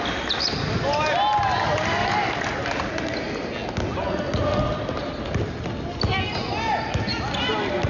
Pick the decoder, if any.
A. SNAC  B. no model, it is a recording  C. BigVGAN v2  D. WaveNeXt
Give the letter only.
B